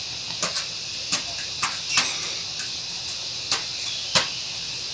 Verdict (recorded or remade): recorded